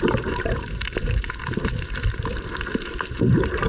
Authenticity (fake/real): fake